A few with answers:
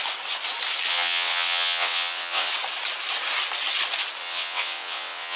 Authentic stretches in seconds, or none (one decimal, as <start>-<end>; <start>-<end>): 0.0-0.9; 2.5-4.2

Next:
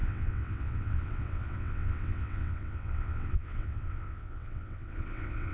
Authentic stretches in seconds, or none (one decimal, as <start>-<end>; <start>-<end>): none

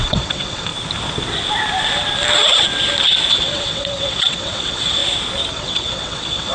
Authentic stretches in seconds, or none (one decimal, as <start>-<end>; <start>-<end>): 0.7-3.3; 5.0-5.5

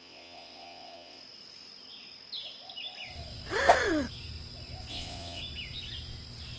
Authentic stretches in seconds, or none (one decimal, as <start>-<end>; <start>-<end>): 1.2-4.9; 5.4-6.6